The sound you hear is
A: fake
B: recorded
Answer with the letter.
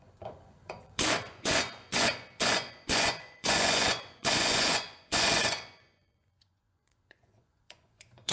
A